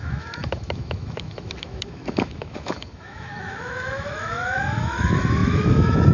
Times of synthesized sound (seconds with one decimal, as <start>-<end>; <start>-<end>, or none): 0.0-6.1